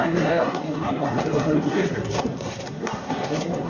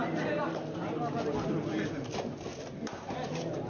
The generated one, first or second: first